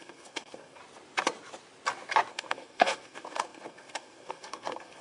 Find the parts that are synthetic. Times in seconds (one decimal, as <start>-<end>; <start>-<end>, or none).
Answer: 0.0-0.8; 2.3-5.0